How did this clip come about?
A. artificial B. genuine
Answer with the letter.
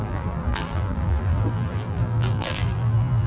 A